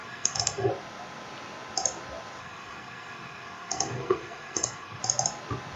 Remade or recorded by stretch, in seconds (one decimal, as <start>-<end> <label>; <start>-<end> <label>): 0.0-0.7 remade; 0.7-2.4 recorded; 2.4-5.0 remade; 5.0-5.8 recorded